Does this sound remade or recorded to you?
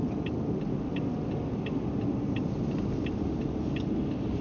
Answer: recorded